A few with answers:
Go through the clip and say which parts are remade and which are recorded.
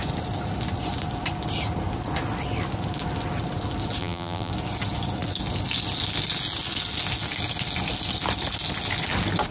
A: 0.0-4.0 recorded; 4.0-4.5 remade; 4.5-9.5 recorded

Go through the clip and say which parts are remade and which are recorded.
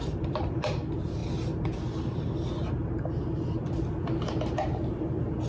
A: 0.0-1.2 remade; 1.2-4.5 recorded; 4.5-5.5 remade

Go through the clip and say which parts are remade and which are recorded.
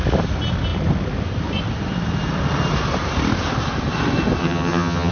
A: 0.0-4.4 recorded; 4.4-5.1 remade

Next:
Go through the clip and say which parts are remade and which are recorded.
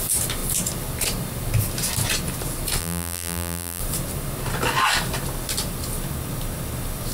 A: 0.0-2.8 recorded; 2.8-3.8 remade; 3.8-7.1 recorded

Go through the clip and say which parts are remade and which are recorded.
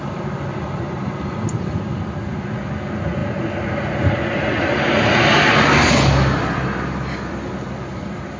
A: 0.0-8.4 recorded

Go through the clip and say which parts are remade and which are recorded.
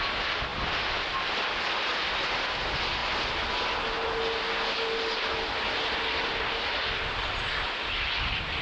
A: 0.0-8.6 recorded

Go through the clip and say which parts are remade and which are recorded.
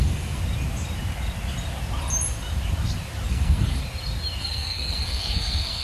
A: 0.0-0.4 remade; 0.4-3.3 recorded; 3.3-3.8 remade; 3.8-4.4 recorded; 4.4-5.8 remade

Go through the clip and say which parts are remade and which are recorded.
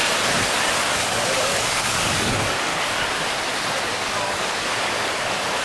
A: 0.0-0.9 recorded; 0.9-2.7 remade; 2.7-3.9 recorded; 3.9-5.6 remade